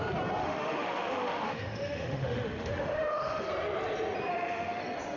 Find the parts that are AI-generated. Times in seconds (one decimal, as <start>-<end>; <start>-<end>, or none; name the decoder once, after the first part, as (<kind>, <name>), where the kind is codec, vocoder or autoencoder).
0.4-3.5 (autoencoder, DAC-VAE); 4.3-4.8